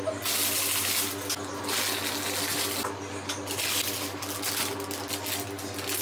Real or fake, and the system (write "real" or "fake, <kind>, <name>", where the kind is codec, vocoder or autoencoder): real